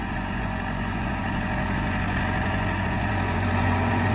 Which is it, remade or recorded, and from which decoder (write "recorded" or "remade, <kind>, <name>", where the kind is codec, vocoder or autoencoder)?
remade, vocoder, Vocos